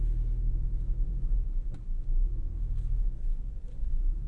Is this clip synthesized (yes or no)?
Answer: no